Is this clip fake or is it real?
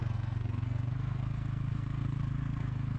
fake